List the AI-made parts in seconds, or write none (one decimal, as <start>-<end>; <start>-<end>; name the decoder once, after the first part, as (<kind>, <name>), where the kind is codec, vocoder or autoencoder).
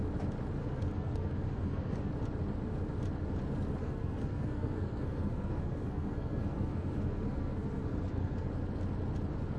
0.6-2.1 (codec, SNAC); 3.8-8.5